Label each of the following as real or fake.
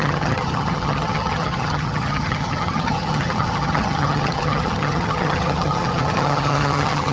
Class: fake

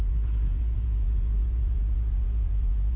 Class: fake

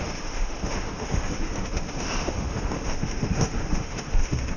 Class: fake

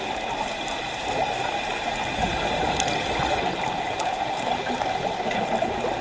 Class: real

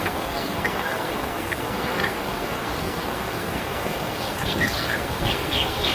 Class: fake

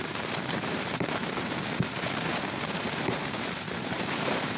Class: fake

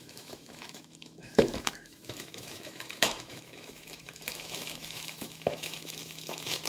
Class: fake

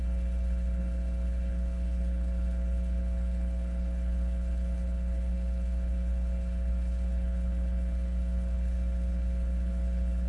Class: fake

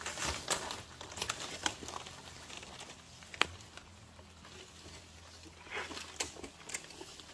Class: real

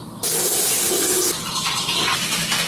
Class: real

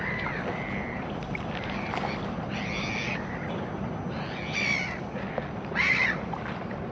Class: fake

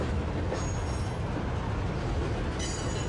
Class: real